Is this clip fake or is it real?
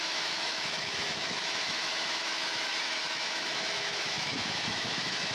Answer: fake